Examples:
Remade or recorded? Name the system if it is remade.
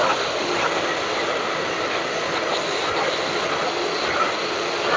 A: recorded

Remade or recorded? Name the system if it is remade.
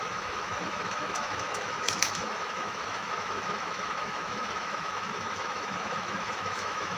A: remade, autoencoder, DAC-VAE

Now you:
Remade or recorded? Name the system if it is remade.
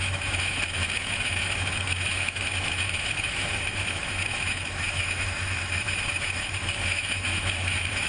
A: remade, autoencoder, DAC-VAE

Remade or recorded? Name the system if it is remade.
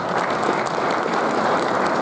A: recorded